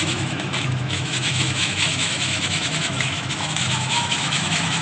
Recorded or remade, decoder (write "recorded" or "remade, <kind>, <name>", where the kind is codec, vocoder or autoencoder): remade, autoencoder, DAC-VAE